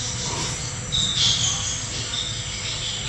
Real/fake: real